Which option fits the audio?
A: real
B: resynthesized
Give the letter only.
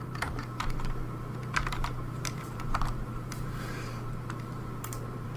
B